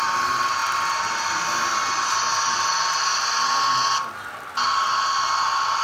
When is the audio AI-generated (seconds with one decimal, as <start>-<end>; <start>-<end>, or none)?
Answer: none